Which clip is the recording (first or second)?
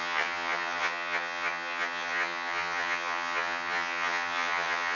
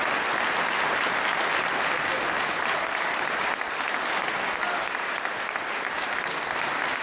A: second